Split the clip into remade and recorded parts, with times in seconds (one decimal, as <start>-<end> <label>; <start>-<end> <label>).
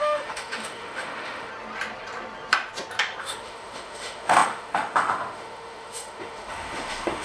0.0-1.5 remade; 1.5-3.2 recorded; 3.2-7.2 remade